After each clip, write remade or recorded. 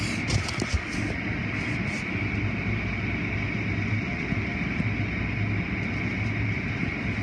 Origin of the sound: recorded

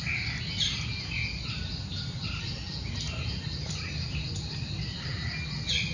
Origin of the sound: recorded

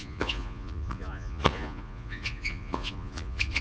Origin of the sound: remade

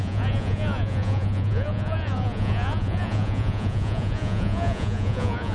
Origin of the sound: remade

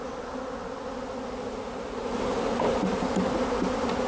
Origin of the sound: recorded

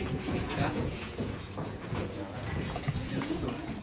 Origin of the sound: remade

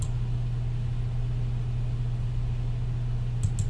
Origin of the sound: recorded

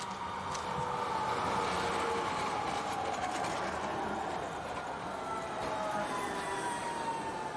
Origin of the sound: recorded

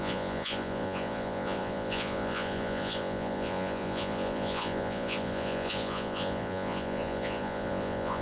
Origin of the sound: remade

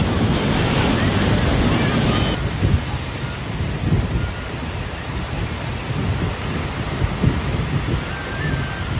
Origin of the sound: recorded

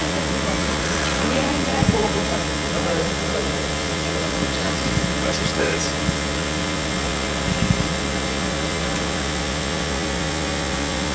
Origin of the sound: remade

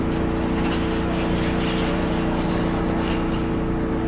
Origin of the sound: recorded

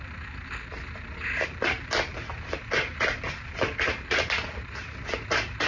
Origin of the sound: recorded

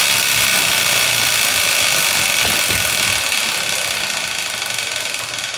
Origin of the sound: recorded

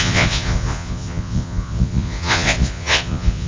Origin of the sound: remade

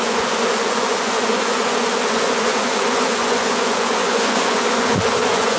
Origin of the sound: remade